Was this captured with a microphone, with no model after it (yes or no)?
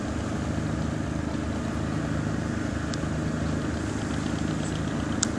yes